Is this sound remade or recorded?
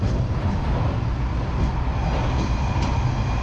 recorded